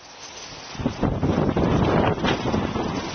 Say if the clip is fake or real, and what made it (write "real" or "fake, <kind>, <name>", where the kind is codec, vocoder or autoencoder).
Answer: real